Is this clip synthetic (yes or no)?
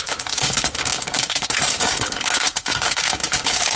yes